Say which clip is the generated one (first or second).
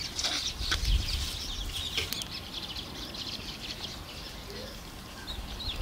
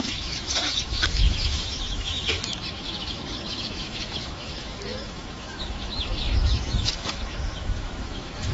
second